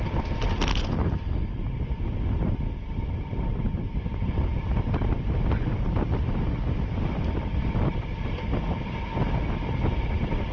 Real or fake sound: real